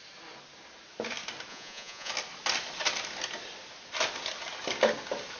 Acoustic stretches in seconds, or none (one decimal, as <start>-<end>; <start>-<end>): 0.0-1.5; 2.1-5.4

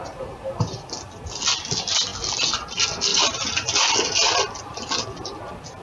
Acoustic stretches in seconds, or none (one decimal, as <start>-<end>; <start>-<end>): 0.0-3.1; 4.3-5.8

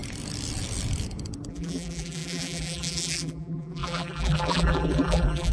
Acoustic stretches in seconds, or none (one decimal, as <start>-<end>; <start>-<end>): 0.0-1.5